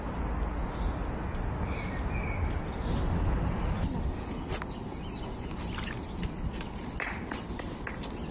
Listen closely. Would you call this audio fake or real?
real